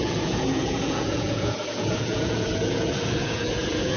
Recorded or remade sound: remade